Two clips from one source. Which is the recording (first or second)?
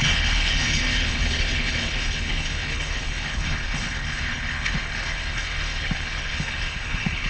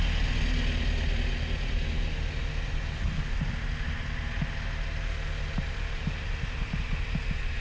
second